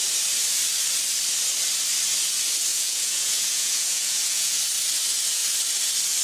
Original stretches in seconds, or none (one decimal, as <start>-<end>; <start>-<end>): 0.0-2.7; 4.6-6.2